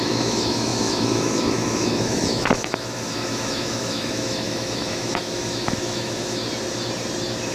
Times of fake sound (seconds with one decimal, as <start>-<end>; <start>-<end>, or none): 0.0-6.4

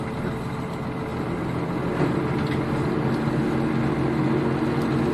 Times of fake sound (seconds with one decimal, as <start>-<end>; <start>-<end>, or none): none

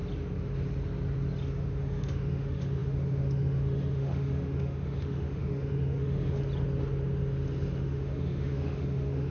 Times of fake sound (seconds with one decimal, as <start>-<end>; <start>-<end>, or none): 1.6-6.4; 7.8-9.3

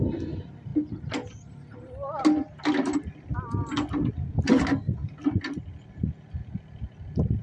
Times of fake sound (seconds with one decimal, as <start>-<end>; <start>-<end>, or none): none

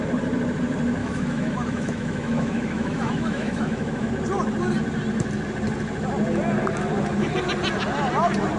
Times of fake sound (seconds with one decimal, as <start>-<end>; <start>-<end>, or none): 1.0-4.1